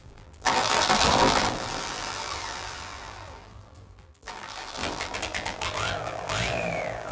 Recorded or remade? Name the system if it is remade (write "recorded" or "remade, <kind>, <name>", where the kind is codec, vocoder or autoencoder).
remade, vocoder, BigVGAN v2